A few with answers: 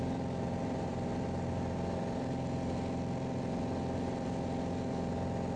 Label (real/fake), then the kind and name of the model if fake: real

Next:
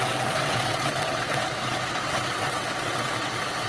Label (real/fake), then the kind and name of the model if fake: fake, vocoder, WaveNeXt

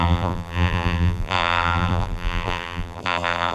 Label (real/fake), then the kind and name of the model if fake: fake, vocoder, BigVGAN v2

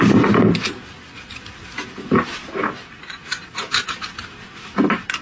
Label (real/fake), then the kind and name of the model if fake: real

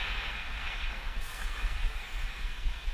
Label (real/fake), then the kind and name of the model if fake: fake, codec, SNAC